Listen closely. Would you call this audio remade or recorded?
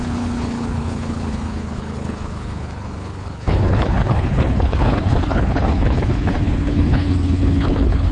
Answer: remade